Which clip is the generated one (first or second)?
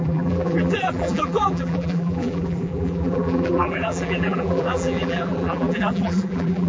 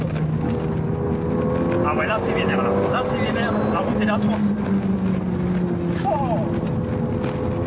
first